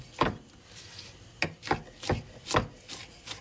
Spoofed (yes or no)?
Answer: no